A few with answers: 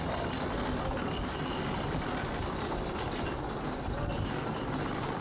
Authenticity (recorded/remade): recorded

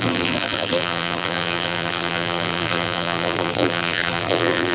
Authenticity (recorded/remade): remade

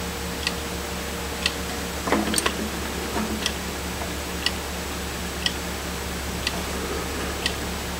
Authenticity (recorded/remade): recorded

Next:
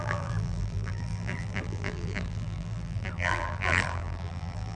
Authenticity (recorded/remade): remade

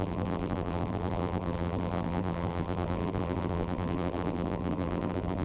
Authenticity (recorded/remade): remade